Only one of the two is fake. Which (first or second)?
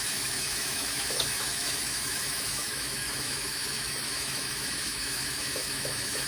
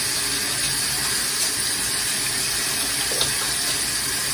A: first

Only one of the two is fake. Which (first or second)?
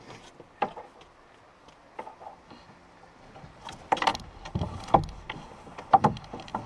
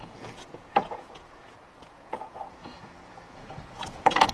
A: second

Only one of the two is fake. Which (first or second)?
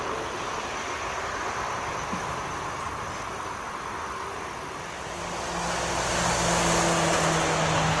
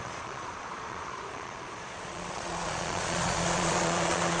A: second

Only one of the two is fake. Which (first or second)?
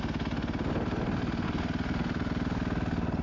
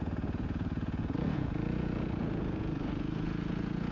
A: second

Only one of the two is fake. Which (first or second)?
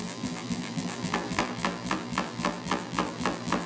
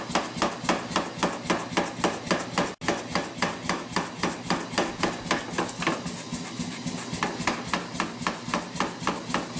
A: first